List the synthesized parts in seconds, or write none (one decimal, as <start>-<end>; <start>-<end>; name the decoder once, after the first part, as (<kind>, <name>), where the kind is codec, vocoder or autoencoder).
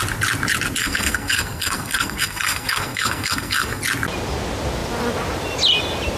0.8-3.8 (codec, SNAC)